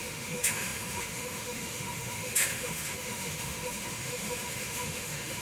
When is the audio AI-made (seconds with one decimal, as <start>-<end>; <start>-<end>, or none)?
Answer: 0.0-5.4